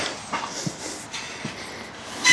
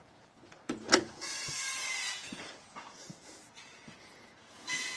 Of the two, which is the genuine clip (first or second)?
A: first